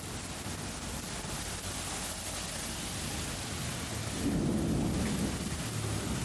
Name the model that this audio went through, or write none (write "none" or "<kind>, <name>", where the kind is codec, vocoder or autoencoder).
none